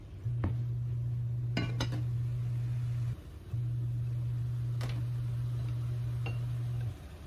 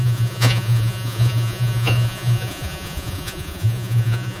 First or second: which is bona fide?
first